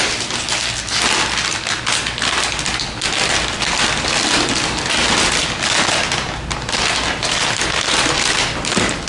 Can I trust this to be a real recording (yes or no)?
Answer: yes